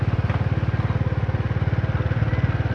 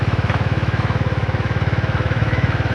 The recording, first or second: first